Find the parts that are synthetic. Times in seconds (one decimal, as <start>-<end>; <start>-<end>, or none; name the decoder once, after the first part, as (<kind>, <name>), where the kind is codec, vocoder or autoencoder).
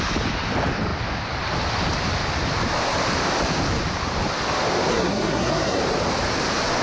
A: 4.9-5.8 (codec, SNAC)